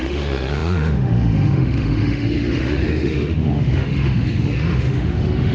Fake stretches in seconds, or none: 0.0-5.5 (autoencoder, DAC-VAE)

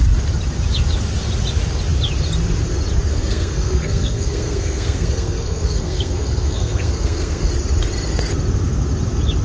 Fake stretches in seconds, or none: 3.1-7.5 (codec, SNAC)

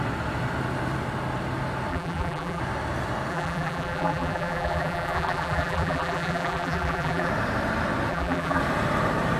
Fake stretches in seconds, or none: 1.9-2.6 (vocoder, BigVGAN v2); 3.3-7.3; 8.1-8.6

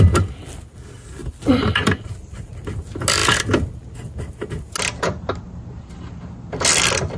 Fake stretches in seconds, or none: 1.2-2.5 (vocoder, BigVGAN v2)

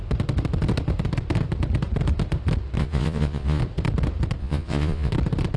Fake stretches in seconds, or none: 2.8-3.6 (vocoder, Vocos); 4.4-5.1

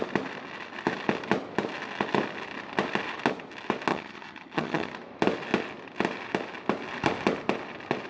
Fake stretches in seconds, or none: 3.9-4.9 (vocoder, HiFi-GAN)